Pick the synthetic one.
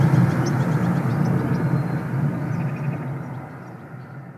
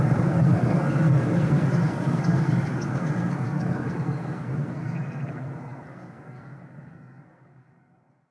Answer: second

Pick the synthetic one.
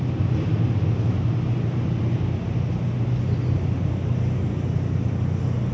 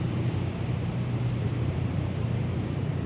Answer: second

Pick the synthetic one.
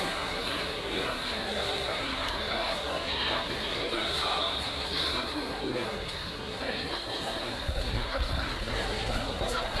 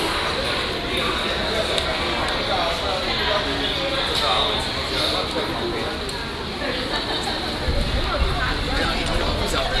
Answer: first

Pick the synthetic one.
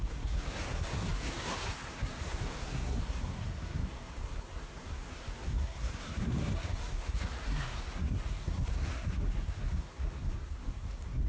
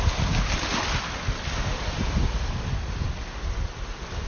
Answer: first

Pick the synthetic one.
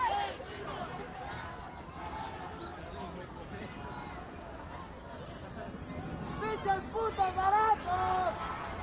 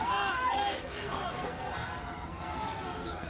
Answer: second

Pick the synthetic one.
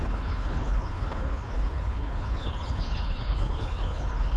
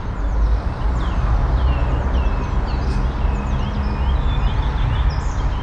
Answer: first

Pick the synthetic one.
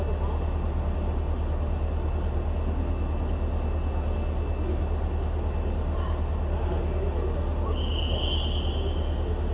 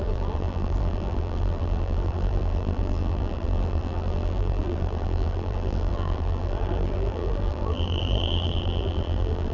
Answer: second